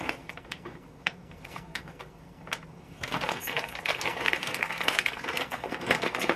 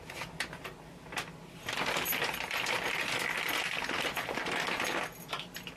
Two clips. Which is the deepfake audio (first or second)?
first